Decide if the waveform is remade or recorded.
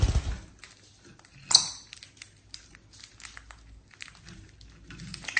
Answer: recorded